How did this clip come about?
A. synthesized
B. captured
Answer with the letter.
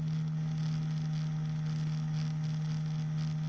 B